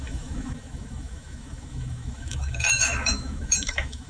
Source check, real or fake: fake